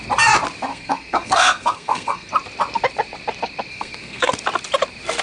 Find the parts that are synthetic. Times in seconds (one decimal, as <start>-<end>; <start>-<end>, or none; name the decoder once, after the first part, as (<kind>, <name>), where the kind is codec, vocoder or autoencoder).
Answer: 0.7-2.3 (codec, SNAC); 3.7-4.3